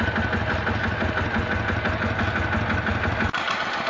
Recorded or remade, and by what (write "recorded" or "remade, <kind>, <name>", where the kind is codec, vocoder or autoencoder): recorded